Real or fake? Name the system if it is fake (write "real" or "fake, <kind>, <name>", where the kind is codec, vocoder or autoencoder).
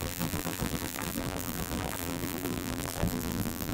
fake, vocoder, BigVGAN v2